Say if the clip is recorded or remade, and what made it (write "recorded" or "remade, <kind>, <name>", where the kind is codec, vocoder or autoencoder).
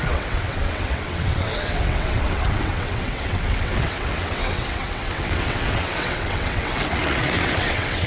remade, vocoder, WaveNeXt